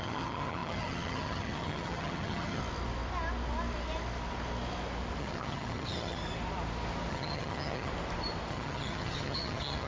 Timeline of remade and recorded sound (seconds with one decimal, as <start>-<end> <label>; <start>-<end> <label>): 0.0-2.6 remade; 2.6-5.2 recorded; 5.2-6.2 remade; 6.2-7.1 recorded; 7.1-7.9 remade; 7.9-8.5 recorded; 8.5-9.9 remade